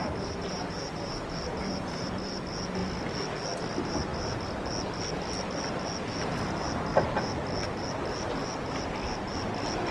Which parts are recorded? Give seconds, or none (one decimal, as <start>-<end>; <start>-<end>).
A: 0.0-9.9